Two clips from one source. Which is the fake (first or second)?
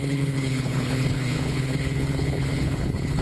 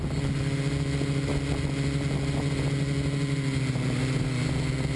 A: first